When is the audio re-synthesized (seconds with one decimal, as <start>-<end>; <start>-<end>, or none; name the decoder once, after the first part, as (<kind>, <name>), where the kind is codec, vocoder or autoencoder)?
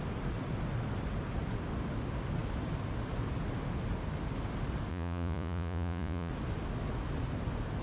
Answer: 4.9-6.3 (vocoder, Vocos)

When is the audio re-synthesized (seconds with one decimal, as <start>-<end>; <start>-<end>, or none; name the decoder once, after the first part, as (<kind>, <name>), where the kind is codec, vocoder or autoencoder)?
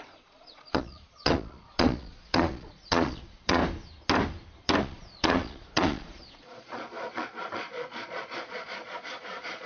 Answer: 0.0-3.6 (vocoder, Vocos); 4.8-9.7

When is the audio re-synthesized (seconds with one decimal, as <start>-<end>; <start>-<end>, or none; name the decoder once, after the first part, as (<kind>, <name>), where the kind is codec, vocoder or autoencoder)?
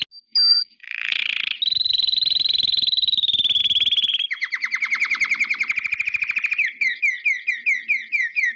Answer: 0.5-1.2 (vocoder, Vocos)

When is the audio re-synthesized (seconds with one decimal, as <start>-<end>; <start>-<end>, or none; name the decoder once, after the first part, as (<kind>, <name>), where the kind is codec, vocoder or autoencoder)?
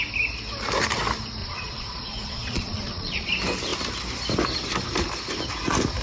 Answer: 1.4-3.3 (vocoder, Vocos)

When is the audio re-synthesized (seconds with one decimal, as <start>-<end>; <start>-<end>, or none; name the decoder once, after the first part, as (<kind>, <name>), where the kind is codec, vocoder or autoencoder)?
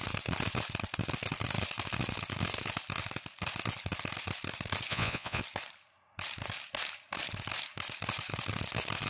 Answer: 4.9-5.4 (vocoder, Vocos)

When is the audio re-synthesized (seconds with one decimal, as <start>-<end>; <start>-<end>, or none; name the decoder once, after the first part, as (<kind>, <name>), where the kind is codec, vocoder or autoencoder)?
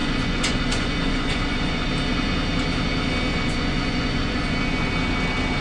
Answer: 0.0-1.9 (vocoder, Vocos); 3.3-4.9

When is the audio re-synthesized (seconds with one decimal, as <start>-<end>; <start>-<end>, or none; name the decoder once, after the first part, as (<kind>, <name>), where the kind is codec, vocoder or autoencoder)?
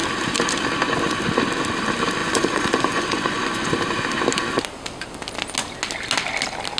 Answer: 2.2-3.8 (vocoder, Vocos)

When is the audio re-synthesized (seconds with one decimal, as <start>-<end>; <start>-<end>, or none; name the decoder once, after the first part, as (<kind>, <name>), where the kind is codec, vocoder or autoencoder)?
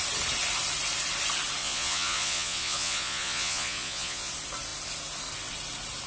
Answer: 1.6-4.3 (vocoder, Vocos)